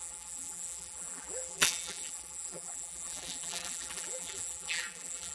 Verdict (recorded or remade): remade